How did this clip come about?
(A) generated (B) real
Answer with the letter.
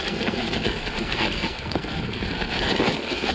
A